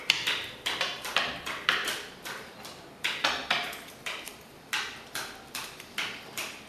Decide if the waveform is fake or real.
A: fake